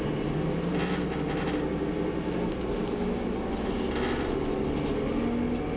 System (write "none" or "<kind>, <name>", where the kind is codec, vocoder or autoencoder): none